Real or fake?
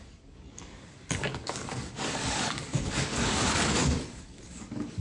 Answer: fake